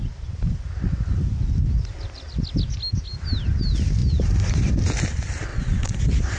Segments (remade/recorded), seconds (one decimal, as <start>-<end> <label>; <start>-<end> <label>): 0.0-5.5 recorded; 5.5-6.0 remade; 6.0-6.4 recorded